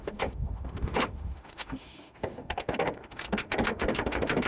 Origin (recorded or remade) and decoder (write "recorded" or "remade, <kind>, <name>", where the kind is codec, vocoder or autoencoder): remade, autoencoder, DAC-VAE